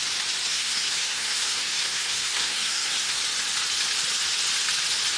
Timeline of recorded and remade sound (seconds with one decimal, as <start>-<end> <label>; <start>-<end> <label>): 0.0-0.5 recorded; 0.5-3.2 remade; 3.2-5.2 recorded